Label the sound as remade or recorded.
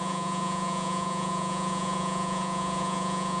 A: remade